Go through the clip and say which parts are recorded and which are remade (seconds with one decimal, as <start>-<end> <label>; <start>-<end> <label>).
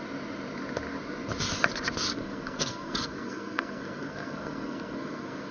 0.0-2.1 recorded; 2.1-5.5 remade